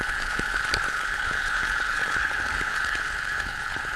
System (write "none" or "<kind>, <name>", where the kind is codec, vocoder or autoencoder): codec, HILCodec